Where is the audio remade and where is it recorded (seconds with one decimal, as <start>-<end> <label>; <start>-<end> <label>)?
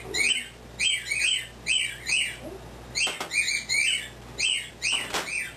0.0-5.6 recorded